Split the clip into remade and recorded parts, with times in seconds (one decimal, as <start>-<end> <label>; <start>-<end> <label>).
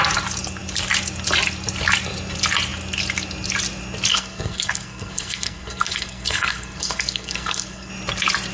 0.0-4.1 recorded; 4.1-7.9 remade; 7.9-8.5 recorded